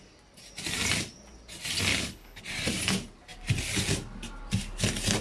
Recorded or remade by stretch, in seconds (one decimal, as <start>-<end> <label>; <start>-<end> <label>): 0.0-1.9 recorded; 1.9-2.4 remade; 2.4-5.2 recorded